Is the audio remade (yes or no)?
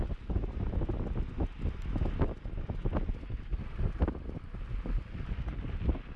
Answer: no